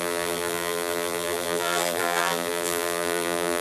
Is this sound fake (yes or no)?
yes